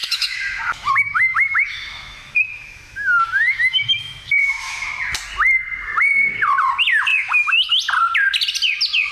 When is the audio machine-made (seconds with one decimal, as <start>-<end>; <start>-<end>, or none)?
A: 0.0-4.9; 7.1-7.7